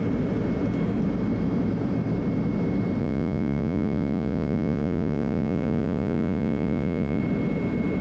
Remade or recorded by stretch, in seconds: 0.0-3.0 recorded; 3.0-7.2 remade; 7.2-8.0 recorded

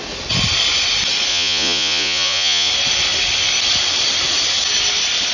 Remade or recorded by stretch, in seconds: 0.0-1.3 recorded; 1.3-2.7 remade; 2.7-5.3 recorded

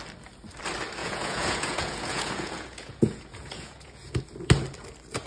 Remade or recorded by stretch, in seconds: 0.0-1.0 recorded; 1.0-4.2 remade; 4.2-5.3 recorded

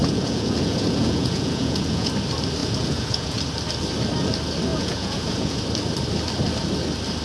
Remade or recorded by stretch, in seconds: 0.0-2.1 remade; 2.1-2.6 recorded; 2.6-3.4 remade; 3.4-4.7 recorded; 4.7-5.6 remade; 5.6-7.2 recorded

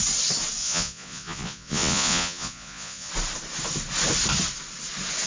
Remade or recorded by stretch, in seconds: 0.0-0.6 recorded; 0.6-3.1 remade; 3.1-5.3 recorded

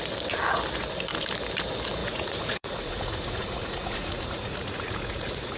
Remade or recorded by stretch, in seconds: 0.0-2.0 recorded; 2.0-5.6 remade

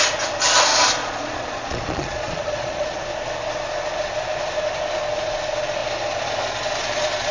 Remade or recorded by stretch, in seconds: 0.0-1.0 recorded; 1.0-3.0 remade; 3.0-7.3 recorded

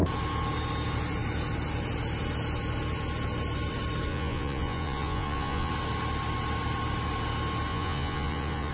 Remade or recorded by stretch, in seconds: 0.0-4.1 recorded; 4.1-5.7 remade; 5.7-7.7 recorded; 7.7-8.7 remade